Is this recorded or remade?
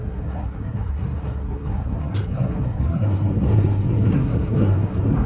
remade